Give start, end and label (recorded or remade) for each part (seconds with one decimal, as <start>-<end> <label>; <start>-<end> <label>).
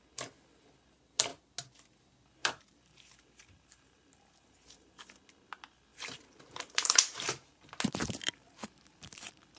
0.0-2.4 recorded; 2.4-5.0 remade; 5.0-5.9 recorded; 5.9-7.7 remade; 7.7-9.6 recorded